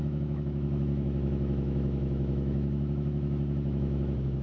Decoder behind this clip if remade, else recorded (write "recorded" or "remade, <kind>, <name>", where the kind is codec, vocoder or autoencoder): remade, autoencoder, DAC-VAE